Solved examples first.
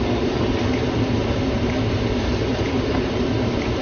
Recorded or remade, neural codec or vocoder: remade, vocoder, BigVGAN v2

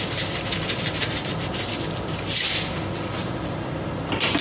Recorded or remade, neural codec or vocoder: recorded